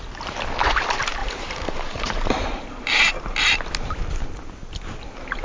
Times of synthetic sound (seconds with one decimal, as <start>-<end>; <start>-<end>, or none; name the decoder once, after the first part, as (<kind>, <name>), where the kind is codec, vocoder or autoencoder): 1.2-3.1 (vocoder, BigVGAN v2)